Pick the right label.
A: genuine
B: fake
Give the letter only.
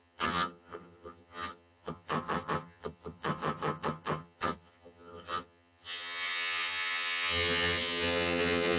B